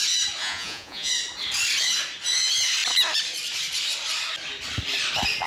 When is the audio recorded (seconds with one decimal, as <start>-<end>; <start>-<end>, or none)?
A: 0.0-0.4; 1.1-5.5